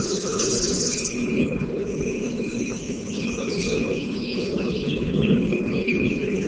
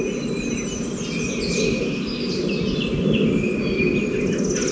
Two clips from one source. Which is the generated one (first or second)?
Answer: first